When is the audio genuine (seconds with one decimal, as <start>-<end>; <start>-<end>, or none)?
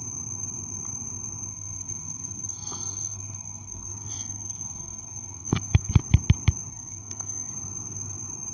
0.0-1.5; 5.9-6.7; 7.5-8.5